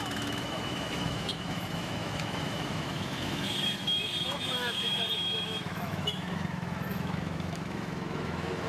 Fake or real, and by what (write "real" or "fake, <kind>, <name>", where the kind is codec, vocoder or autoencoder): fake, autoencoder, DAC-VAE